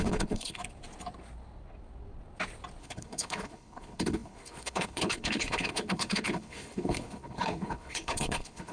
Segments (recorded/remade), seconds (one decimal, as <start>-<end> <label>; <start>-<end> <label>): 0.0-0.6 remade; 0.6-2.8 recorded; 2.8-8.7 remade